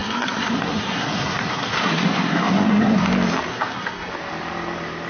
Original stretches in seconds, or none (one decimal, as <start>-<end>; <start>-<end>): 3.1-3.5; 4.1-5.1